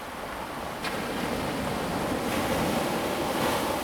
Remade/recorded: recorded